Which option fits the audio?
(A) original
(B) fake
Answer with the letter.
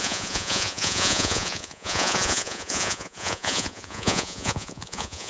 B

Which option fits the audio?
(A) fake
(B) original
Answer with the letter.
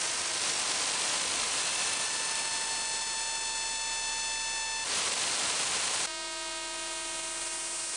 B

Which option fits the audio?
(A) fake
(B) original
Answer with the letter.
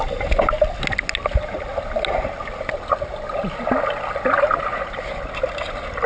B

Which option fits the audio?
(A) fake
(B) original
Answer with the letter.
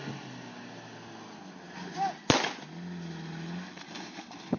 B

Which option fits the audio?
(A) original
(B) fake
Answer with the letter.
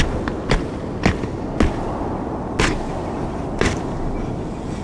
A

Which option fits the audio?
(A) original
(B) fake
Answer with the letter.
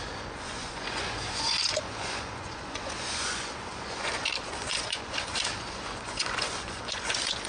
B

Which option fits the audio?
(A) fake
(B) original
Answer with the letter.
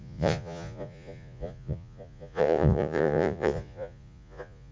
A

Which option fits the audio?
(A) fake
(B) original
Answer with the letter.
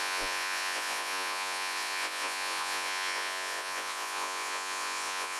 A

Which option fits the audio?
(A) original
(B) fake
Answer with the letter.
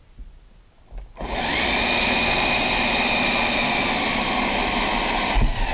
A